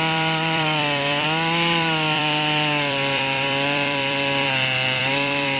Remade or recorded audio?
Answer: remade